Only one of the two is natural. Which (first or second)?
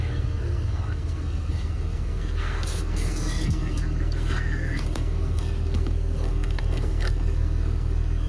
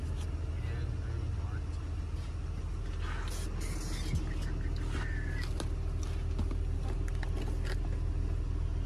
second